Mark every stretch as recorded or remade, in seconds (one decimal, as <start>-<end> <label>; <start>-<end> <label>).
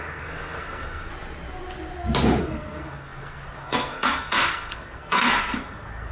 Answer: 0.0-1.1 remade; 1.1-2.4 recorded; 2.4-6.1 remade